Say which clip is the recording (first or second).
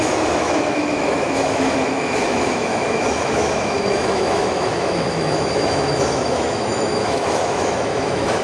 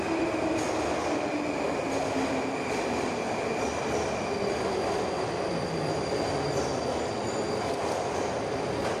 second